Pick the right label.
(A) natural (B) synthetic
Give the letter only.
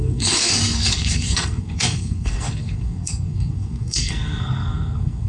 B